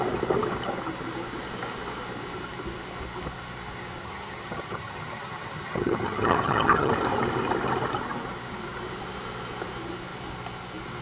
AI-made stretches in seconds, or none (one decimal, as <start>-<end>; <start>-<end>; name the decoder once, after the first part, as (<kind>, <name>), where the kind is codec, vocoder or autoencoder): 4.0-6.9 (vocoder, HiFi-GAN)